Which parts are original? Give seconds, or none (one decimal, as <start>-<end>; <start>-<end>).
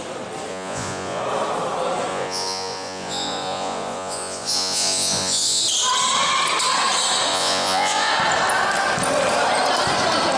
0.0-0.5; 1.2-2.1; 5.6-7.3; 8.1-10.4